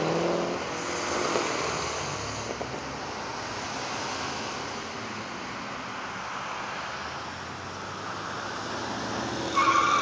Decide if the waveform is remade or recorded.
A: recorded